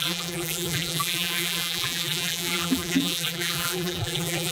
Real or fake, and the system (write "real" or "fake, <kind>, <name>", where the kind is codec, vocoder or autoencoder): fake, vocoder, BigVGAN v2